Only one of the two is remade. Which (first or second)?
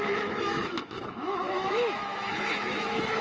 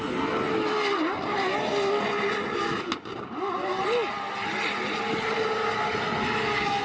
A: first